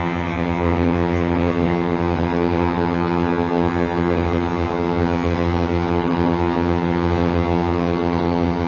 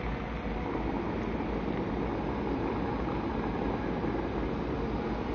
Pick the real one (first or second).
second